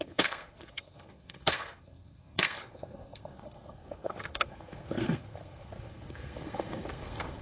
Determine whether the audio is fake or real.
fake